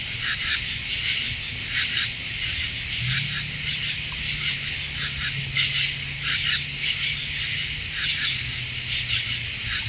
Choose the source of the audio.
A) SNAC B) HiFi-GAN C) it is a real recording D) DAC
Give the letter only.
C